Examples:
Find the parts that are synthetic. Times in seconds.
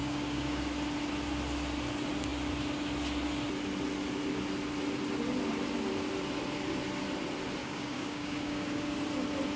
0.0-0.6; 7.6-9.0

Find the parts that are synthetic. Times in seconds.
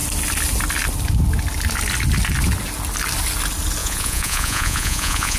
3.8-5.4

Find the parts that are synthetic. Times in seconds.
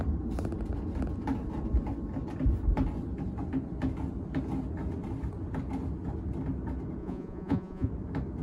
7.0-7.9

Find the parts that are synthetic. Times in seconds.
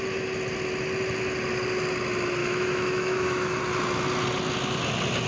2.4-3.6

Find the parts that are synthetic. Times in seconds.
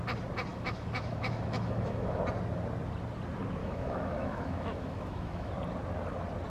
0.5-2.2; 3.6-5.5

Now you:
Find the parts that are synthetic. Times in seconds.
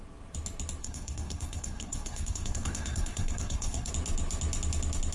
0.8-3.9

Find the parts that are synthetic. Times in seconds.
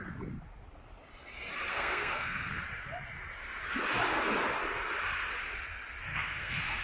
1.7-2.6; 6.1-6.8